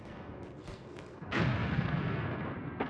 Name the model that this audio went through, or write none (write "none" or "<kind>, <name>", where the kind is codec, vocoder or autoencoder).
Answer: codec, SNAC